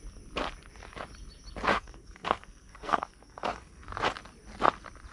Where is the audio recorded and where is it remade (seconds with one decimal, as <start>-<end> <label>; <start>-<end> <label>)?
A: 0.0-1.7 recorded; 1.7-3.9 remade; 3.9-5.1 recorded